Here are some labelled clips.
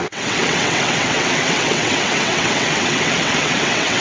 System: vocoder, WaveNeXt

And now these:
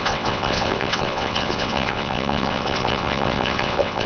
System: vocoder, WaveNeXt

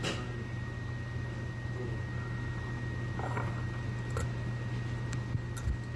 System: none